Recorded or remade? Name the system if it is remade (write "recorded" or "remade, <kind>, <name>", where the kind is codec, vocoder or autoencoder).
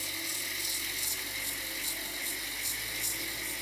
recorded